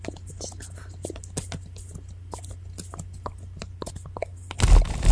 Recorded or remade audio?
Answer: recorded